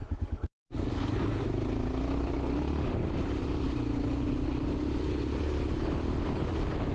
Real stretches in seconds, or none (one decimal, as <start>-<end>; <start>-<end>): 1.4-6.9